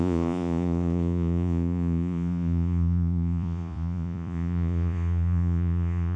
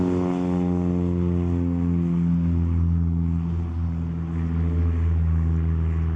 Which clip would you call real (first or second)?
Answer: second